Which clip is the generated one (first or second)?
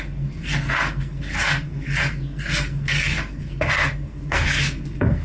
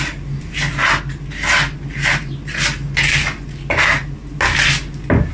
first